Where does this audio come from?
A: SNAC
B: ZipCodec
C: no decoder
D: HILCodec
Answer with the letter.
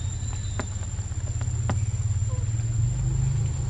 C